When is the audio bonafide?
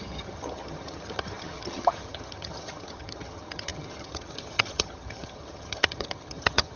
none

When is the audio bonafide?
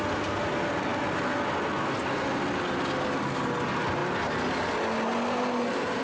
0.0-6.0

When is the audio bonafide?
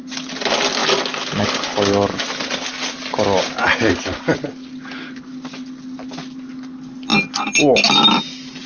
0.0-8.7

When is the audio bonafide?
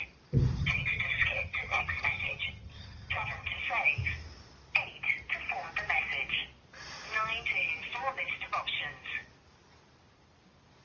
0.0-0.6; 3.6-10.8